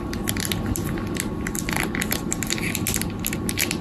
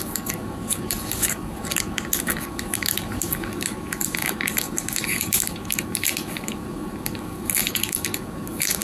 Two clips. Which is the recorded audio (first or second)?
first